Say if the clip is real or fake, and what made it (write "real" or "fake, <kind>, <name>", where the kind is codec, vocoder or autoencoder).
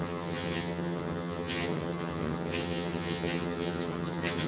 fake, vocoder, HiFi-GAN